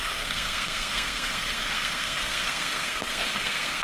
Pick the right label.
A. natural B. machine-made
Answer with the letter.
B